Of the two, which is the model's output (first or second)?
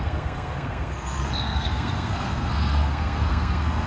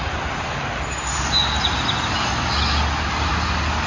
first